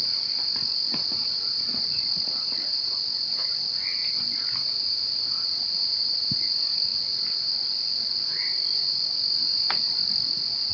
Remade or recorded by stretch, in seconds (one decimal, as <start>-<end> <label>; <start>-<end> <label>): 0.0-10.7 recorded